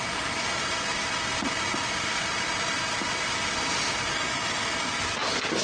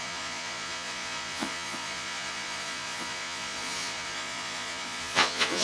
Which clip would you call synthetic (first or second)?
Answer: second